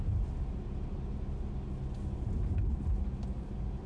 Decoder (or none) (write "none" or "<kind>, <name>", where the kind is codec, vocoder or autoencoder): none